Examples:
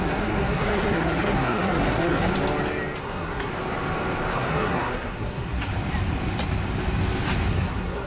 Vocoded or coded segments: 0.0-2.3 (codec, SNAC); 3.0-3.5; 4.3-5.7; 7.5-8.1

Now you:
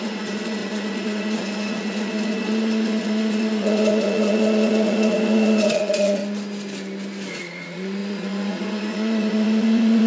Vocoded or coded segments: 0.0-6.2 (vocoder, Vocos); 7.3-10.1

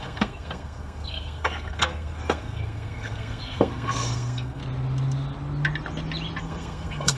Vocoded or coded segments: 0.0-4.6 (codec, SNAC); 6.4-7.2